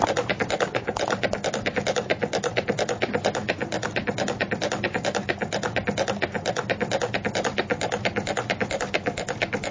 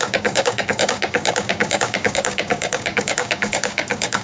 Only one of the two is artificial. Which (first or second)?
second